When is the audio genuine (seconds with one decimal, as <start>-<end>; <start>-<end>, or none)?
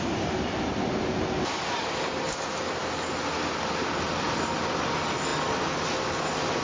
0.0-6.6